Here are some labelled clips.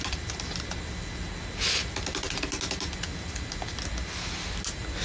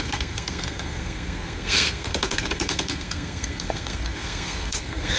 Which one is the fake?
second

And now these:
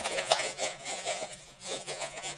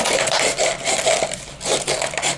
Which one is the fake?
first